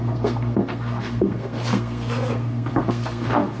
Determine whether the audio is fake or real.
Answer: fake